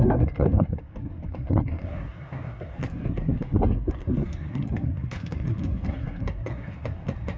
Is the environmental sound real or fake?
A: fake